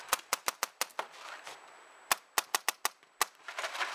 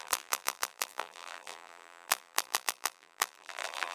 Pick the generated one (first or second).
second